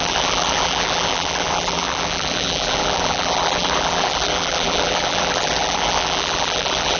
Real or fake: fake